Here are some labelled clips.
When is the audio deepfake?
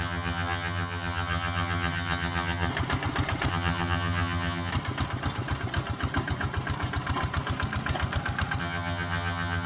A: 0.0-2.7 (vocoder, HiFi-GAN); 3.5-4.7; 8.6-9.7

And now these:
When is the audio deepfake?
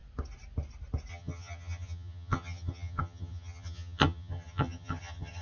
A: 1.1-5.4 (vocoder, HiFi-GAN)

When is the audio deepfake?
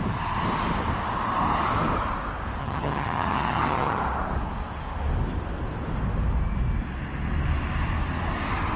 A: 2.6-4.0 (vocoder, HiFi-GAN)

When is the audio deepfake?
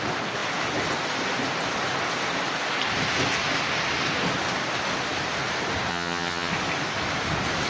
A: 5.9-6.5 (vocoder, HiFi-GAN)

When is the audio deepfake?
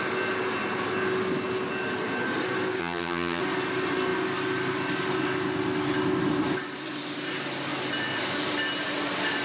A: 2.8-3.4 (vocoder, HiFi-GAN)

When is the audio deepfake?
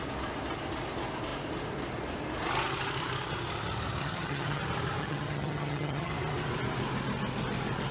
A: 4.0-4.6 (vocoder, HiFi-GAN); 5.0-6.1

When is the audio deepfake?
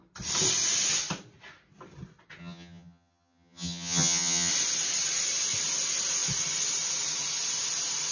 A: 2.4-4.5 (vocoder, HiFi-GAN)